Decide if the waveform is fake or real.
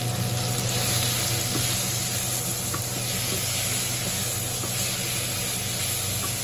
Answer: real